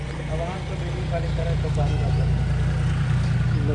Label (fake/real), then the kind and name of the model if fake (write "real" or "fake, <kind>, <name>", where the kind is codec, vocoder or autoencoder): real